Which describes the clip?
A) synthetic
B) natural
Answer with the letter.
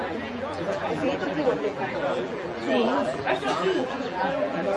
A